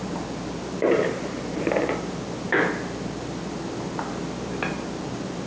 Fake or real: real